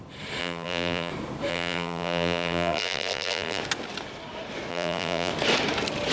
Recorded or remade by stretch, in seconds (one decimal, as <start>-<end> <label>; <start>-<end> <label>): 0.0-0.4 recorded; 0.4-1.1 remade; 1.1-1.5 recorded; 1.5-3.6 remade; 3.6-4.7 recorded; 4.7-5.3 remade; 5.3-6.1 recorded